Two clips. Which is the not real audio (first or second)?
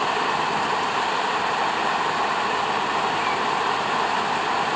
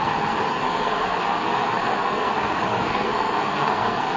second